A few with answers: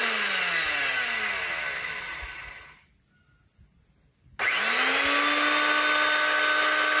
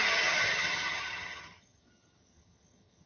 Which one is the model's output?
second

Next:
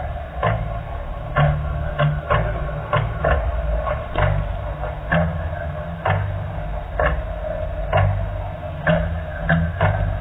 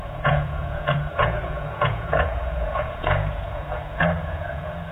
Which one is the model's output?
second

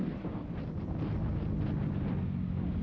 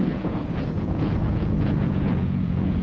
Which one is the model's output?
second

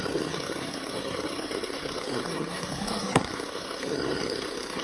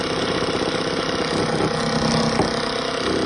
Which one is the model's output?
first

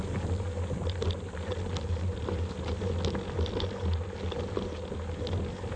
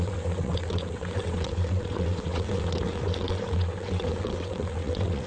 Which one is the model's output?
second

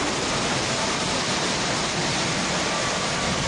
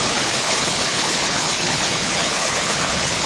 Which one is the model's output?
second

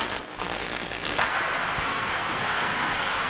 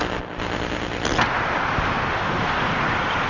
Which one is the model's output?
first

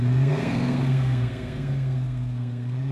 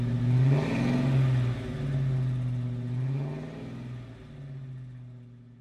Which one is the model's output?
first